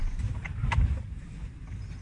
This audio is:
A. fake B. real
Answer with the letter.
A